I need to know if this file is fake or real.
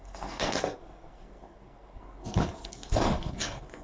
fake